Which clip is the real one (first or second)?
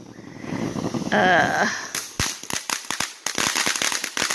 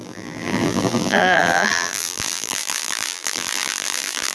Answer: first